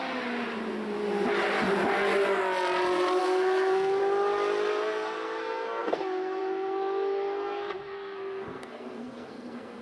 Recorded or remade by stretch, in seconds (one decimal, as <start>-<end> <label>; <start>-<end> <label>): 0.0-3.2 recorded; 3.2-4.0 remade; 4.0-4.7 recorded; 4.7-9.8 remade